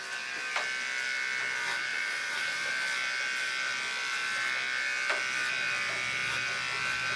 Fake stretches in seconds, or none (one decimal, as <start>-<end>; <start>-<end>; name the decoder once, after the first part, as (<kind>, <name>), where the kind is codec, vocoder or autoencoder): 1.9-2.7 (vocoder, BigVGAN v2)